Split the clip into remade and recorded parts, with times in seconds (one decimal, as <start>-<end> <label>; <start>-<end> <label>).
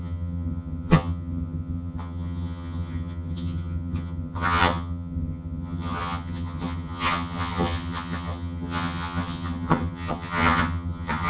0.0-11.3 remade